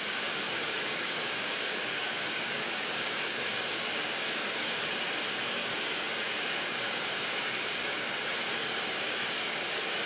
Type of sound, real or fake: fake